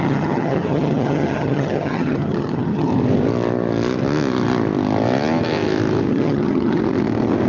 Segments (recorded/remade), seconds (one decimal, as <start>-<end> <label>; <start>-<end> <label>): 0.0-2.9 remade; 2.9-6.1 recorded; 6.1-6.8 remade; 6.8-7.5 recorded